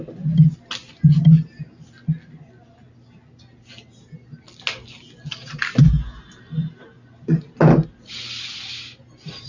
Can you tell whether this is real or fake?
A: real